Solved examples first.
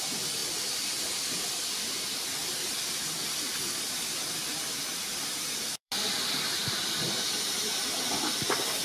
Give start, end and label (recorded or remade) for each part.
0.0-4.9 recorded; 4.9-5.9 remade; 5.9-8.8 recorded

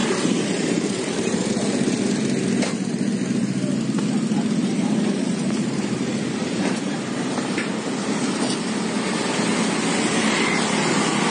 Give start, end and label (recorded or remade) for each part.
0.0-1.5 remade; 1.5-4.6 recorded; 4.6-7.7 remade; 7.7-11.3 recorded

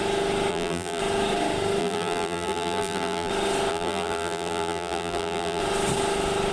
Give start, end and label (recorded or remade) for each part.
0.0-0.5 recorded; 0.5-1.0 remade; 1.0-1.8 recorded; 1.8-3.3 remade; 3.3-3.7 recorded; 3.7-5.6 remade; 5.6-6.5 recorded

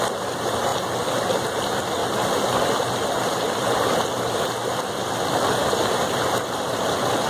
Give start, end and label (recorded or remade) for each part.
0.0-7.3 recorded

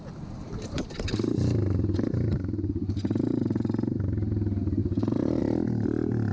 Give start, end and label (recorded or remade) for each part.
0.0-0.4 recorded; 0.4-3.6 remade; 3.6-4.8 recorded; 4.8-5.4 remade; 5.4-6.3 recorded

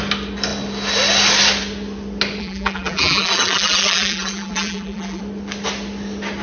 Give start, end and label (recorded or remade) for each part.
0.0-2.4 recorded; 2.4-5.2 remade; 5.2-6.4 recorded

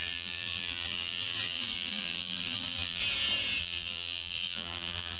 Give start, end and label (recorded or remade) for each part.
0.0-3.0 remade; 3.0-3.6 recorded; 3.6-5.2 remade